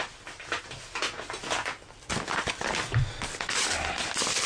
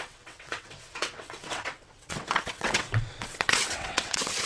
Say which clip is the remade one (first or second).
second